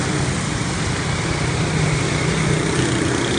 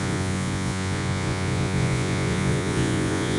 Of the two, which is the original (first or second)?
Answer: first